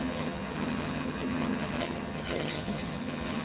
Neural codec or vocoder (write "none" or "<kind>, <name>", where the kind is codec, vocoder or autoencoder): vocoder, HiFi-GAN